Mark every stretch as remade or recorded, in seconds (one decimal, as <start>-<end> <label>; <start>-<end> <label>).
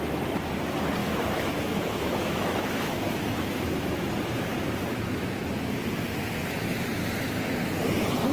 0.0-1.0 recorded; 1.0-4.1 remade; 4.1-4.9 recorded; 4.9-5.7 remade; 5.7-8.3 recorded